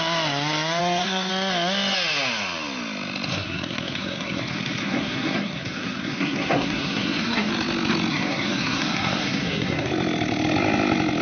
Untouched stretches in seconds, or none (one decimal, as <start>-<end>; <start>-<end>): 0.0-0.8; 1.3-3.3; 7.5-8.1; 9.9-11.2